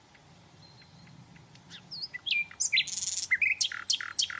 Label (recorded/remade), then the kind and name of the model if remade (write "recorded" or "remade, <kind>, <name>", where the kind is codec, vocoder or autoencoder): recorded